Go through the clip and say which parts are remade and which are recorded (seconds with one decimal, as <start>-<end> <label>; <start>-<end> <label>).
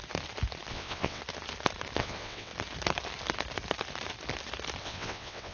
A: 0.0-0.7 recorded; 0.7-1.2 remade; 1.2-2.0 recorded; 2.0-2.5 remade; 2.5-4.8 recorded; 4.8-5.5 remade